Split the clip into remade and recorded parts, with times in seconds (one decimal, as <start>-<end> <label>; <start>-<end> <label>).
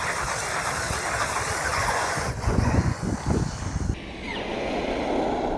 0.0-1.7 recorded; 1.7-3.1 remade; 3.1-4.3 recorded; 4.3-4.8 remade; 4.8-5.6 recorded